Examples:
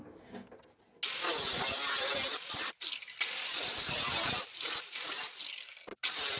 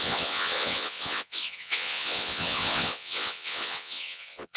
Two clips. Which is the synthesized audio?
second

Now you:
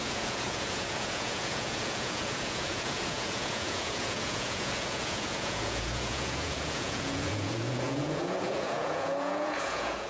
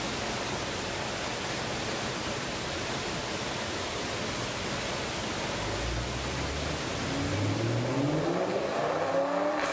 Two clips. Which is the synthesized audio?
first